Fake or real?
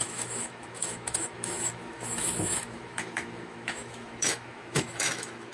fake